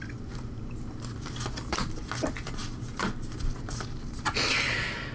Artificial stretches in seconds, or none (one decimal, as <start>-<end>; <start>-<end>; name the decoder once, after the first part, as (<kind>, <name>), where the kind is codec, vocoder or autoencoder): none